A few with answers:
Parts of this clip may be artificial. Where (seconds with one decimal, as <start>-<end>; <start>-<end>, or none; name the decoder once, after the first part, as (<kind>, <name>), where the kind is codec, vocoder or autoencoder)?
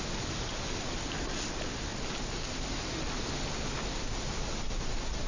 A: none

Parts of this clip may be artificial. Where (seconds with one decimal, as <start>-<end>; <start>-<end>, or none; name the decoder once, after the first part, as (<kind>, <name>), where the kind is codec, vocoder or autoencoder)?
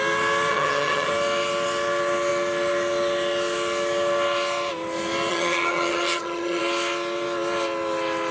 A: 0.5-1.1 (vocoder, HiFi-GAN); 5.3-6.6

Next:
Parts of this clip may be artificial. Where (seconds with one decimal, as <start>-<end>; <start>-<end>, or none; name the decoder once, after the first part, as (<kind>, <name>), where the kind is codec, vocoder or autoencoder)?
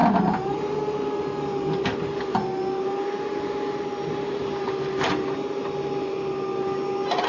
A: none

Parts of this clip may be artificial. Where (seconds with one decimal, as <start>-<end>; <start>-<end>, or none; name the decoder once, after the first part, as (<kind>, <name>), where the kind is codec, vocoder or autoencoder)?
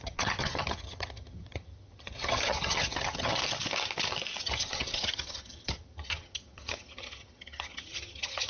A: 0.0-3.4 (vocoder, HiFi-GAN); 4.4-8.5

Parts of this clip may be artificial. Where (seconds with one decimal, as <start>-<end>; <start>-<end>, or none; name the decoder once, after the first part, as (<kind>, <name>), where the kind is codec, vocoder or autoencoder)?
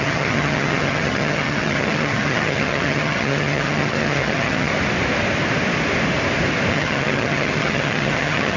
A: 0.0-4.7 (vocoder, HiFi-GAN); 6.7-8.6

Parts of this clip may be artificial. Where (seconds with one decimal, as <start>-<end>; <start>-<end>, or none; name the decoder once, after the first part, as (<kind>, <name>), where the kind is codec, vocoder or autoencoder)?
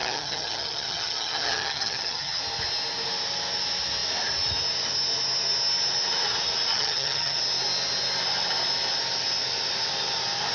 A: 0.0-2.4 (vocoder, HiFi-GAN); 6.7-7.4